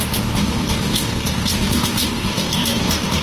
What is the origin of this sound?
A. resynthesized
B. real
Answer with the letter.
A